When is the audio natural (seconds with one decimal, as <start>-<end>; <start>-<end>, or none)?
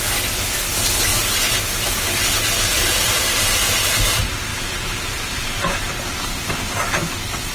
0.0-1.1; 2.2-2.7; 3.7-4.5; 6.5-7.5